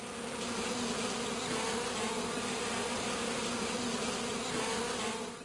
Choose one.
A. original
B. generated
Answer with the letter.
A